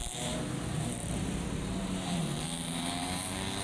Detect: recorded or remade remade